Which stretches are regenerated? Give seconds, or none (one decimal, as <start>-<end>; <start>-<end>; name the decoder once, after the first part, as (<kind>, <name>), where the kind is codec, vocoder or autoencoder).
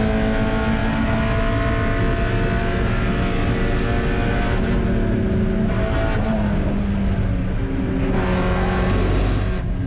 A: none